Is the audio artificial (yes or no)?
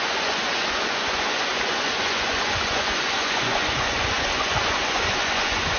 yes